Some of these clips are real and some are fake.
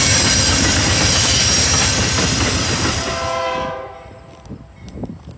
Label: real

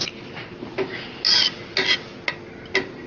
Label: real